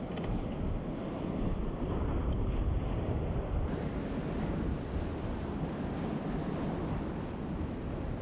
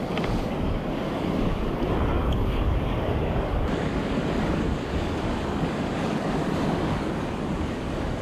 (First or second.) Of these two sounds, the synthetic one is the second